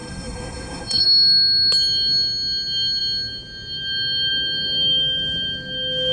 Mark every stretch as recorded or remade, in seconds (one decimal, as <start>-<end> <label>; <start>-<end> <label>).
0.0-1.0 remade; 1.0-6.1 recorded